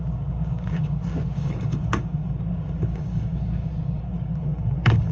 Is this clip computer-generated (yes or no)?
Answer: yes